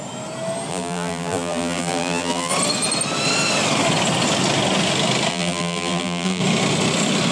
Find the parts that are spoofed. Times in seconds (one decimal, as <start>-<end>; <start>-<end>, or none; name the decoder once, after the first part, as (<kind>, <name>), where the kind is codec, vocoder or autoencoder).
0.7-2.5 (vocoder, BigVGAN v2); 5.3-6.4

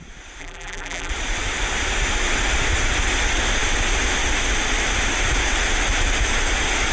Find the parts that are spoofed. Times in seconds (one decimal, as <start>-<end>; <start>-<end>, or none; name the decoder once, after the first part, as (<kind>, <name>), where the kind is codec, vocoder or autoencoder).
0.4-1.1 (vocoder, BigVGAN v2)

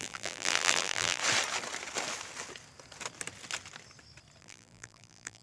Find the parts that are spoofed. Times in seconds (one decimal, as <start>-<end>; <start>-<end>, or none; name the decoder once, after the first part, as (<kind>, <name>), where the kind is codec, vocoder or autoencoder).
0.0-1.2 (vocoder, BigVGAN v2); 4.4-5.4

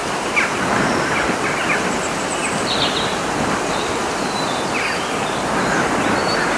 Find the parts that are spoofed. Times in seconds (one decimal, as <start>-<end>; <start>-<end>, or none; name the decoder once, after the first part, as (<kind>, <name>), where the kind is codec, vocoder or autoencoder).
none

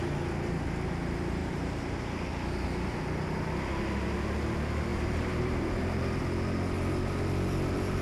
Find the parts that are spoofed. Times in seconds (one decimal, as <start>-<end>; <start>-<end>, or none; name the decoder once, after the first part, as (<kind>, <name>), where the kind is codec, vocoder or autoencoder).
1.4-2.0 (vocoder, BigVGAN v2); 4.9-6.2

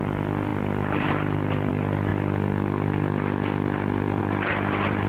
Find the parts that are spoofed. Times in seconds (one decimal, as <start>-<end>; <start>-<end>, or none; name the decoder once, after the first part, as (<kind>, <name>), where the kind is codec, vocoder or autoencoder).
0.5-1.7 (vocoder, BigVGAN v2)

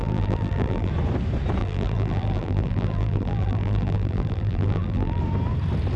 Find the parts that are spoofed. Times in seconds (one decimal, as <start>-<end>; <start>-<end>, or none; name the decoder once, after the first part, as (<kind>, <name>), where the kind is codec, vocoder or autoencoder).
0.0-0.9 (vocoder, BigVGAN v2); 1.6-5.2

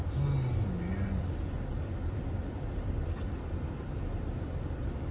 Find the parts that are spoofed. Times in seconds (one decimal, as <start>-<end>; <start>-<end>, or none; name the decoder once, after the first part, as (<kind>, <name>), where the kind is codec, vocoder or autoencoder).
1.9-5.1 (vocoder, BigVGAN v2)